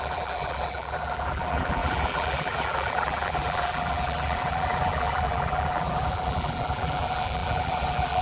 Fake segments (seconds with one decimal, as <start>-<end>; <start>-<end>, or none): 0.0-8.2